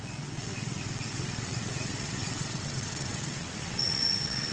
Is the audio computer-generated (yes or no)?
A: yes